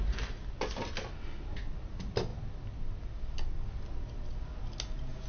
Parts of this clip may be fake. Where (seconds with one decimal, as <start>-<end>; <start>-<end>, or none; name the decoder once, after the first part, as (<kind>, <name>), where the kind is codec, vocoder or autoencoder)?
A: none